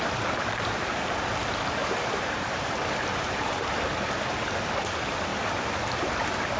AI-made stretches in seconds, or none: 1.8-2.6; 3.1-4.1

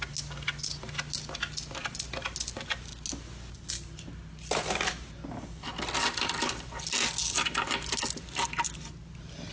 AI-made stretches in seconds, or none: none

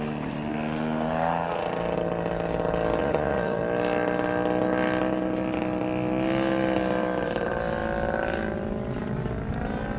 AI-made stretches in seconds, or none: 3.0-3.6

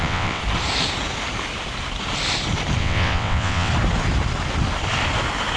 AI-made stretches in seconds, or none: 0.0-0.4; 2.8-3.7

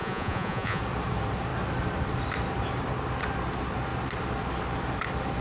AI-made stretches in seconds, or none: 0.0-0.8

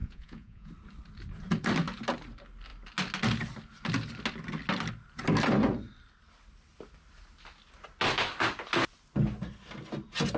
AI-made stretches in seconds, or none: 0.0-0.7